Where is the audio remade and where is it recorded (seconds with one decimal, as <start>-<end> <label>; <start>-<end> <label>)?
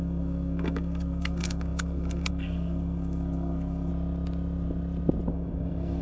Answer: 0.0-3.9 remade; 3.9-5.3 recorded; 5.3-6.0 remade